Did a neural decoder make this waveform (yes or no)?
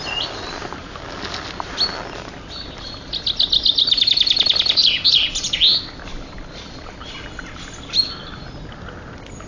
no